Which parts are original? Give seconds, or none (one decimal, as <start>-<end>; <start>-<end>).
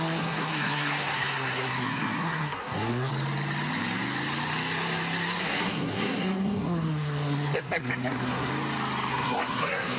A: 3.1-5.4; 8.5-9.1